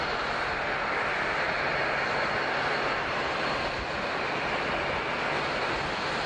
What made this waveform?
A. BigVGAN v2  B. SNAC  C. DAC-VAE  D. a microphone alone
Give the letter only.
D